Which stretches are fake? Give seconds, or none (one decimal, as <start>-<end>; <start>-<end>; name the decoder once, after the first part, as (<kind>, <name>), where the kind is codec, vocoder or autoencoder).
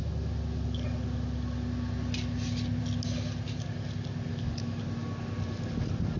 4.3-4.8 (autoencoder, DAC-VAE)